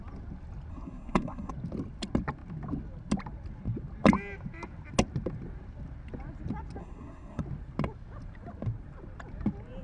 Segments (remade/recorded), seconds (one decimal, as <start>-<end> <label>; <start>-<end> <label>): 0.0-0.7 recorded; 0.7-1.5 remade; 1.5-6.8 recorded; 6.8-7.4 remade; 7.4-9.8 recorded